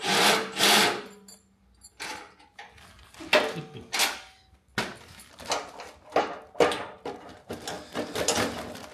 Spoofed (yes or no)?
no